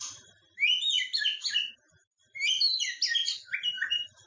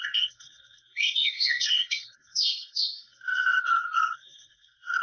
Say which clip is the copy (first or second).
second